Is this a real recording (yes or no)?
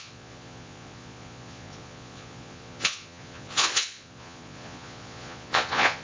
no